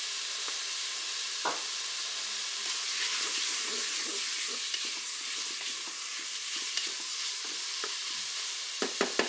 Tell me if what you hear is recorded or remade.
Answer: recorded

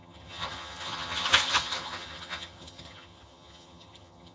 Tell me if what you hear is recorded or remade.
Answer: remade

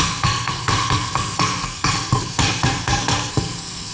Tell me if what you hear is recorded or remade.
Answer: remade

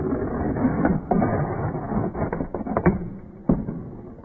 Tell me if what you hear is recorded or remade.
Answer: recorded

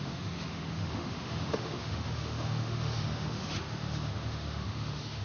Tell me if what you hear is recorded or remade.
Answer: remade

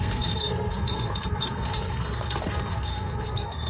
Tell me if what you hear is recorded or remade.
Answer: remade